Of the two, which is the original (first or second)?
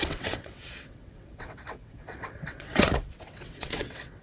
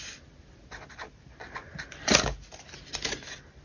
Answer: second